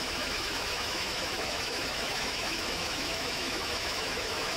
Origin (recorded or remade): remade